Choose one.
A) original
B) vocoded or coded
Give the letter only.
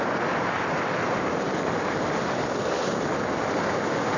A